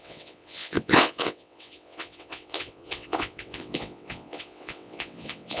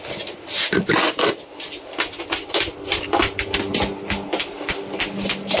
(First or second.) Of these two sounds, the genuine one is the second